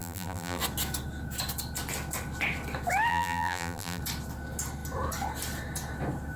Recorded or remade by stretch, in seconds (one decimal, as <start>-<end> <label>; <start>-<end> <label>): 0.0-0.6 remade; 0.6-3.1 recorded; 3.1-4.0 remade; 4.0-6.4 recorded